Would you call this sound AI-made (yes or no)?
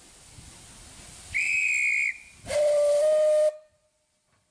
no